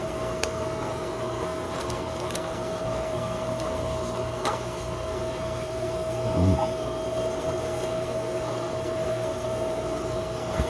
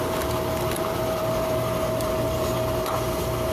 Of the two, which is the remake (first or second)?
first